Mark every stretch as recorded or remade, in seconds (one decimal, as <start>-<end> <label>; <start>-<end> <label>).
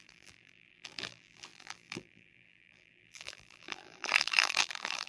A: 0.0-5.1 remade